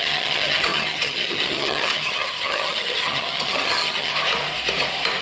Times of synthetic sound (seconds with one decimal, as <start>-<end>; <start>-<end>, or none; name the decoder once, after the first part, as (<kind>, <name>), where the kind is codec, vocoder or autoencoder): 0.0-4.1 (vocoder, HiFi-GAN)